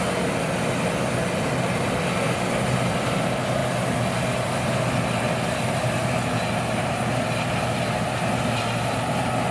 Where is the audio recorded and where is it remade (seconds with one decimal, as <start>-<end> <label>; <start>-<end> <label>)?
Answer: 0.0-9.5 recorded